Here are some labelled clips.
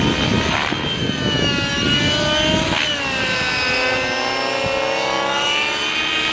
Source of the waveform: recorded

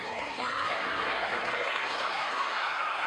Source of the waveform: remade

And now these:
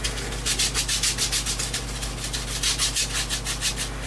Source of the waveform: recorded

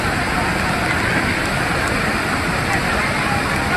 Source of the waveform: recorded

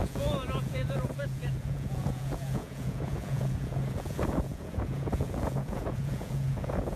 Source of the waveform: remade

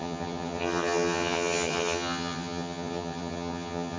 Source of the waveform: remade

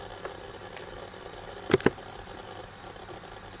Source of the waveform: recorded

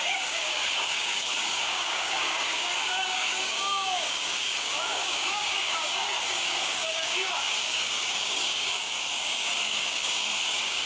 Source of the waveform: remade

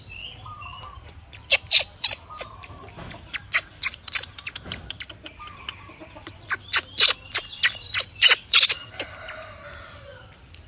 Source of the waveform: remade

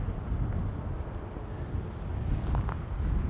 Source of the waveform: recorded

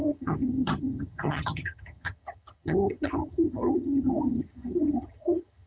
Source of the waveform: remade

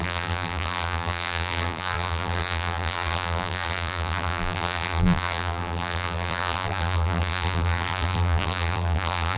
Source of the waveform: remade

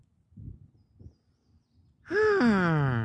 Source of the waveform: recorded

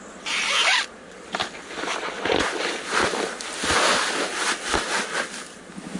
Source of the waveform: recorded